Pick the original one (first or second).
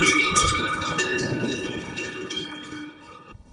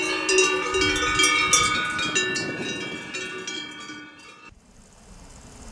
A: second